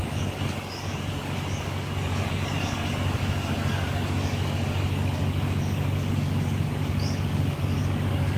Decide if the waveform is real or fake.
fake